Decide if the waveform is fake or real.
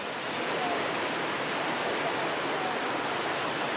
real